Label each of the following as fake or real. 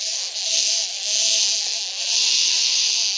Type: fake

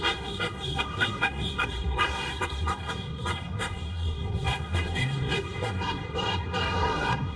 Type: fake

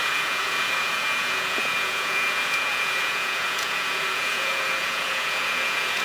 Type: fake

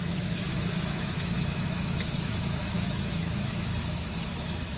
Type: fake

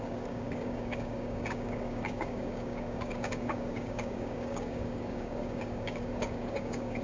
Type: fake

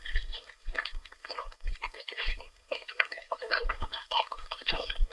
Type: fake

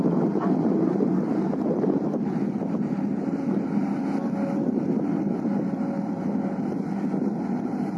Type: real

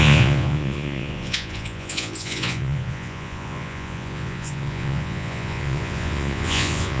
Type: fake